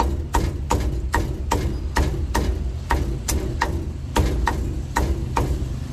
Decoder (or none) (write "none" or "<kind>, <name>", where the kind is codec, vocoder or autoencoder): none